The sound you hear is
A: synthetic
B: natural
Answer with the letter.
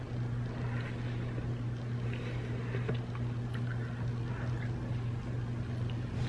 B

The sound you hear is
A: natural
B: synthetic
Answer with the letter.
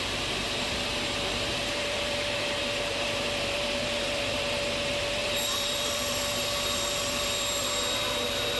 B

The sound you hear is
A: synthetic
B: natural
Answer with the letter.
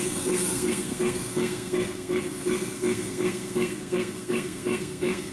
A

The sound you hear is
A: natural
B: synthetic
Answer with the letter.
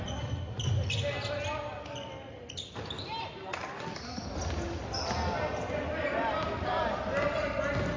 A